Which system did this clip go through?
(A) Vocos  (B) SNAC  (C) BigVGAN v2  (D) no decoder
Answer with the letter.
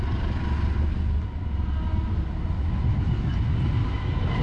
D